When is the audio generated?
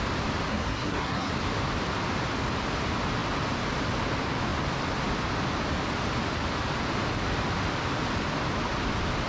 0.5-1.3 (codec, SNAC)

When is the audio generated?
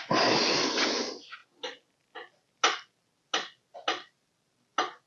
none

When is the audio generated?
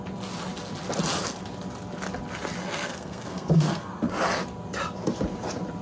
2.6-4.1 (codec, SNAC)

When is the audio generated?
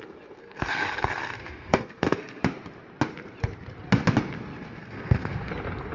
0.4-2.4 (codec, SNAC); 4.8-5.5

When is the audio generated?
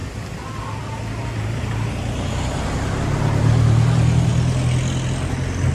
none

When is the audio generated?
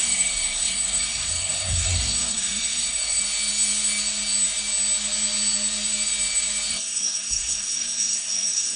0.0-3.2 (codec, SNAC); 6.7-8.8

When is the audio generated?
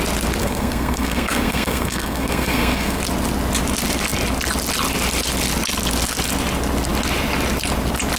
0.4-3.0 (codec, SNAC)